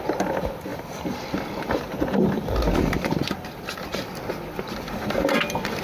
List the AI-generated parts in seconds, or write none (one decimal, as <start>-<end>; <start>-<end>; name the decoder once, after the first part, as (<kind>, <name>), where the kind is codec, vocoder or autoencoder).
0.7-4.2 (vocoder, BigVGAN v2)